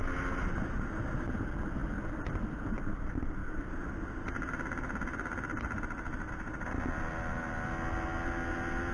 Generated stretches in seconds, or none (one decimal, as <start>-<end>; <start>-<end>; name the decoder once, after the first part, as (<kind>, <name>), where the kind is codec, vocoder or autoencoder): none